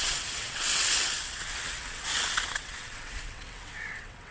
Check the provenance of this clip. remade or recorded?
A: remade